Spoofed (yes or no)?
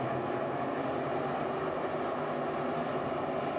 no